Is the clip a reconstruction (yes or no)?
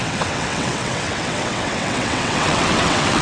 yes